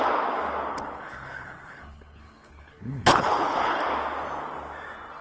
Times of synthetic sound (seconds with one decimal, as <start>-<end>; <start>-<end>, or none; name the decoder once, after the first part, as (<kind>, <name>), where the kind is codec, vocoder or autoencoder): 0.7-3.8 (codec, HILCodec)